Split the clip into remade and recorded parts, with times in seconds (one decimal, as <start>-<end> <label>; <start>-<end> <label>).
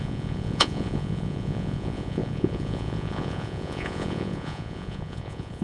0.0-5.6 remade